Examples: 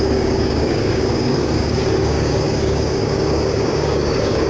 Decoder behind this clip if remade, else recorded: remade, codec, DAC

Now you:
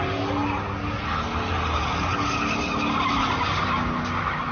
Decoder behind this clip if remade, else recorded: recorded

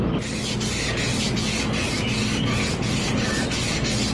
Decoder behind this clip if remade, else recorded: recorded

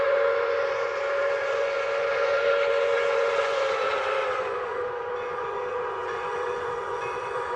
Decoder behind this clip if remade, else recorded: remade, vocoder, Vocos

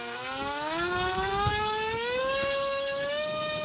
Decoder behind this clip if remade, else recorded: remade, autoencoder, DAC-VAE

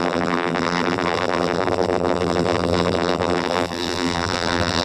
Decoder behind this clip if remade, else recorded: remade, vocoder, BigVGAN v2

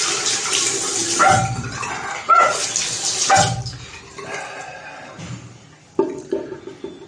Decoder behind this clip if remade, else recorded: recorded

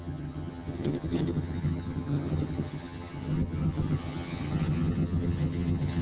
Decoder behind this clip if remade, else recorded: remade, vocoder, HiFi-GAN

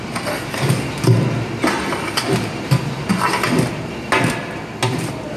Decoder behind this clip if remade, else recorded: recorded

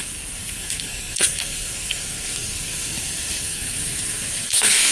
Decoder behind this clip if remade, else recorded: remade, codec, SNAC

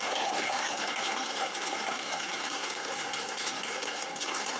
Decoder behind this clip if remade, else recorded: remade, codec, SNAC